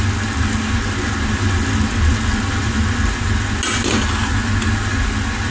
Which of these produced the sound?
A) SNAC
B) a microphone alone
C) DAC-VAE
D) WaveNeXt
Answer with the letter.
B